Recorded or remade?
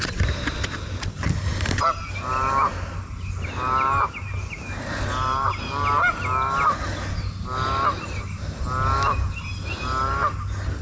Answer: recorded